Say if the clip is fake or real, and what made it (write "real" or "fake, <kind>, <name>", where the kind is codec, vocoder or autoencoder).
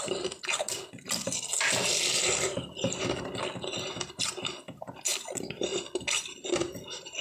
real